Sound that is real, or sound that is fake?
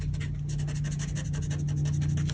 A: real